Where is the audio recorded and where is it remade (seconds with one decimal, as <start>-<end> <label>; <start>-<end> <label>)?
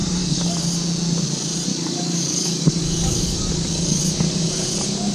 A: 0.0-0.6 remade; 0.6-1.7 recorded; 1.7-4.0 remade; 4.0-5.1 recorded